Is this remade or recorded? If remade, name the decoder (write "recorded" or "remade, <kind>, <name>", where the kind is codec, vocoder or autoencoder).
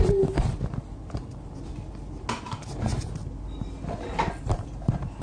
recorded